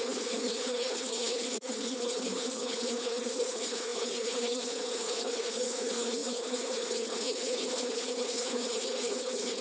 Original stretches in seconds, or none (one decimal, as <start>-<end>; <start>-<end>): none